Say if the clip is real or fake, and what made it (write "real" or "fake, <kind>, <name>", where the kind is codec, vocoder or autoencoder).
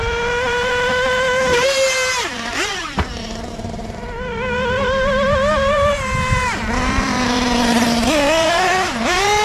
fake, vocoder, BigVGAN v2